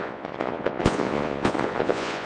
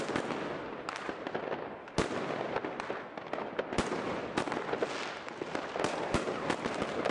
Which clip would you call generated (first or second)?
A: first